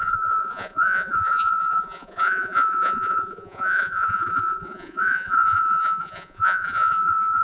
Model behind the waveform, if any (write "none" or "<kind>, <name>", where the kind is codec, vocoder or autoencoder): vocoder, Vocos